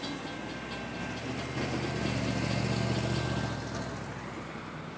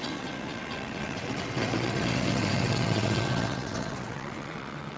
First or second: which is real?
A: first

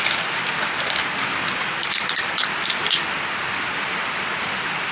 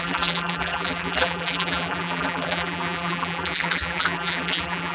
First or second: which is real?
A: first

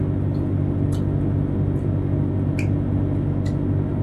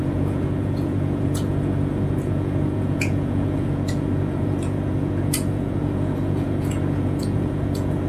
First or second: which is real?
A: first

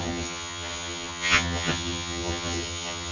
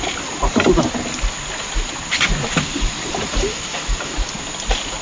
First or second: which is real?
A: second